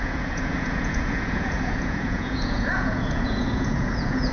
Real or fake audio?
fake